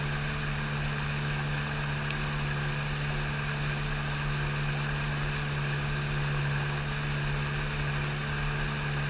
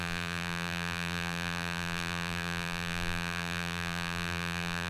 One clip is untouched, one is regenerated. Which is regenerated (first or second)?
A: second